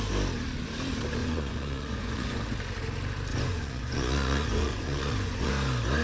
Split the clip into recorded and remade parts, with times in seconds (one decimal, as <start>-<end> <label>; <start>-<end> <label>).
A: 0.0-1.2 recorded; 1.2-2.4 remade; 2.4-3.3 recorded; 3.3-5.5 remade; 5.5-6.0 recorded